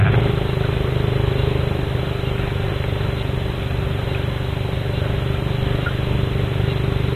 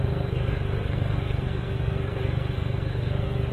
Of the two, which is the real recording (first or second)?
first